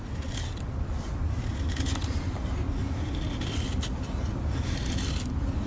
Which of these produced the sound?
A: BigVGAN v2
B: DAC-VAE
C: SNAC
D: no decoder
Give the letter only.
D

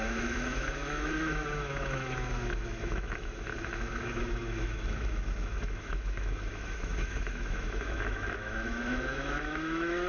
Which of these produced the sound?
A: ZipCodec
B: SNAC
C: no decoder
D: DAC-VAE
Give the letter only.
D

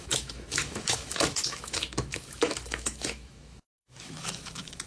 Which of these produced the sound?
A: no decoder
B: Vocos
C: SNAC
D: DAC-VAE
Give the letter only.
D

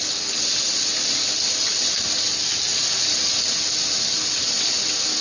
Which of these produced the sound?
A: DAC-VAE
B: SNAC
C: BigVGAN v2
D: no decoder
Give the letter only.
D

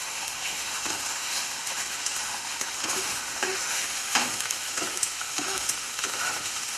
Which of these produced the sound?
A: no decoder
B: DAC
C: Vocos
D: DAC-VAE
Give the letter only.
D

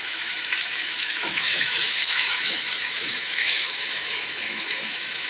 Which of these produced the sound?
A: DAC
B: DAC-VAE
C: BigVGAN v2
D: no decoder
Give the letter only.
B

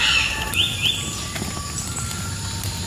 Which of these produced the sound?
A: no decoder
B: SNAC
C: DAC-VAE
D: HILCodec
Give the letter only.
A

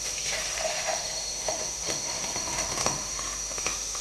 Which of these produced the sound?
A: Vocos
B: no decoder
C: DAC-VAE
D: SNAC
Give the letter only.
C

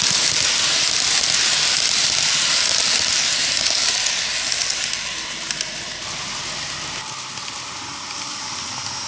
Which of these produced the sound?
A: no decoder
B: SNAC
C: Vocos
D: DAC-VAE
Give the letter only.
A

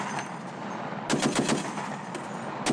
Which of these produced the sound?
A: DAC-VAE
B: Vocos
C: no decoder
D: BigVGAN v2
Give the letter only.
C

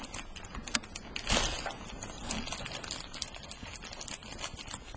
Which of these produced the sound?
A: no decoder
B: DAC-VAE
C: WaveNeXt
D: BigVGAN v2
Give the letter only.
A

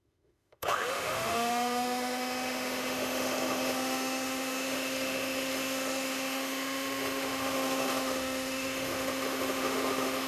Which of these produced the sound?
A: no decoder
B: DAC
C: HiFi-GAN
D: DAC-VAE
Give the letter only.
D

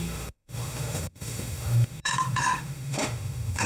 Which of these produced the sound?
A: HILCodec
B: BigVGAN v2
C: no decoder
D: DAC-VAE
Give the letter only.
D